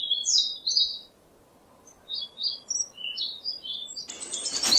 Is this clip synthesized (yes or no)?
no